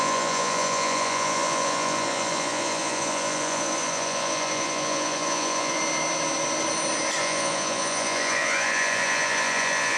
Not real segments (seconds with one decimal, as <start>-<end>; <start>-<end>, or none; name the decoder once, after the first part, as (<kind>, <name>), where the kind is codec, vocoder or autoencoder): 0.0-5.8 (vocoder, Vocos); 7.2-10.0